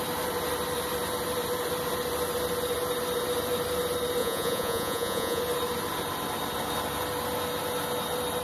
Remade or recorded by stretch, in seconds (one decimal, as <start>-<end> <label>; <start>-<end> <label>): 0.0-4.2 recorded; 4.2-5.4 remade; 5.4-8.4 recorded